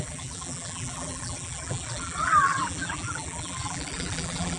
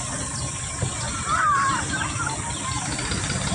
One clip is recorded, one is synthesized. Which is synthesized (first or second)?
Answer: first